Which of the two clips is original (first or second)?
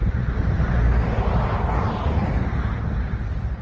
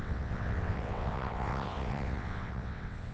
first